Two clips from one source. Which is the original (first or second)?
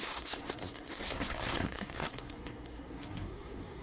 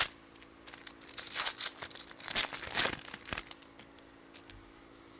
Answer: second